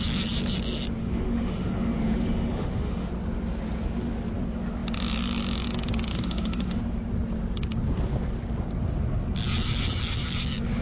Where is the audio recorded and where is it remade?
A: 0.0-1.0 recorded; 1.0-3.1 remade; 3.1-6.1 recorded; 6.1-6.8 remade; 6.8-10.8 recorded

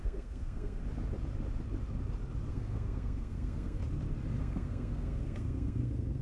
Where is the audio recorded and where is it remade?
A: 0.0-0.8 remade; 0.8-2.5 recorded; 2.5-3.8 remade; 3.8-4.4 recorded; 4.4-6.2 remade

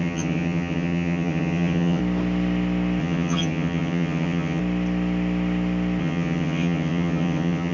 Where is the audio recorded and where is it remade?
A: 0.0-2.0 remade; 2.0-3.0 recorded; 3.0-4.6 remade; 4.6-6.0 recorded; 6.0-7.7 remade

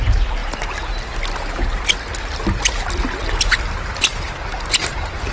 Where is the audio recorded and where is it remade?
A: 0.0-5.3 recorded